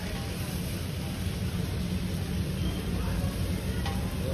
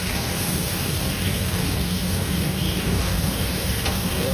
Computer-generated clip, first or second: second